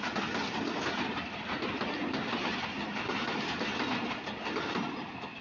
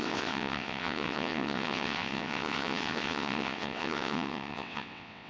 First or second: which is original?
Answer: first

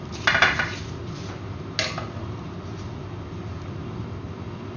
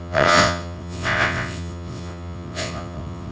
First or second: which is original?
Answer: first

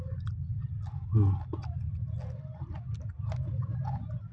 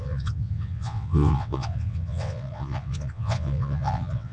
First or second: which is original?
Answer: first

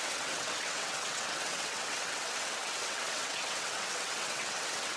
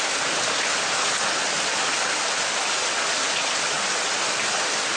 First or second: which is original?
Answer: second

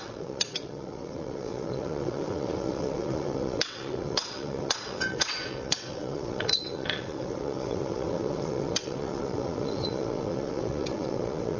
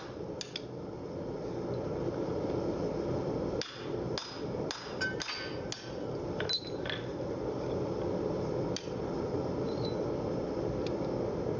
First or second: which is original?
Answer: second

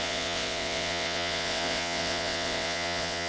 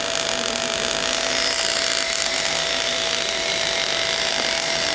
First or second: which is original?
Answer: second